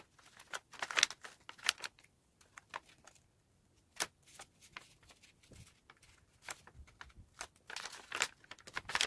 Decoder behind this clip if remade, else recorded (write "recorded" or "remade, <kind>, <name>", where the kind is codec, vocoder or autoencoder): recorded